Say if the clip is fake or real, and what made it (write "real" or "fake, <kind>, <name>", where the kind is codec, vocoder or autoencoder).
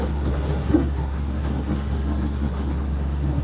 fake, codec, SNAC